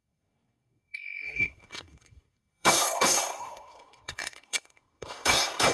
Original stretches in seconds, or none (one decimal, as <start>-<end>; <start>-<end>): none